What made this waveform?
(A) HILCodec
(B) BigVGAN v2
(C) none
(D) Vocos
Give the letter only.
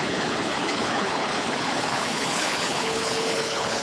A